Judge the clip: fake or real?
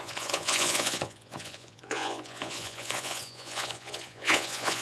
fake